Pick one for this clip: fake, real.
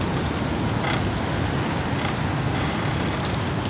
real